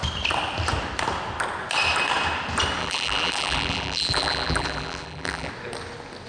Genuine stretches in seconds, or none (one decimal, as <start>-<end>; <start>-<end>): 0.0-2.8; 5.5-6.3